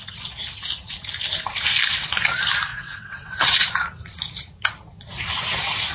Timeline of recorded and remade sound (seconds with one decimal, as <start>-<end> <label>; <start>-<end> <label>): 0.0-2.7 recorded; 2.7-3.7 remade; 3.7-5.9 recorded

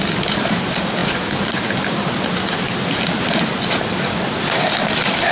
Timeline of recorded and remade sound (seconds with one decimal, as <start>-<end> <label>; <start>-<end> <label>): 0.0-5.3 recorded